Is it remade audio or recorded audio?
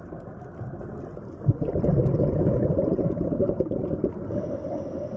recorded